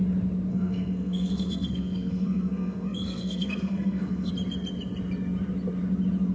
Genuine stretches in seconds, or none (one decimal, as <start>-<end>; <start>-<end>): 0.0-0.5; 4.3-6.3